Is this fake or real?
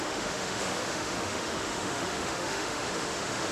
fake